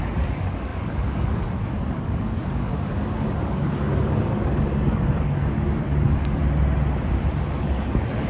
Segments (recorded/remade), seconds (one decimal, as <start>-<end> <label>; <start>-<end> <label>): 0.0-6.4 remade; 6.4-7.6 recorded; 7.6-8.3 remade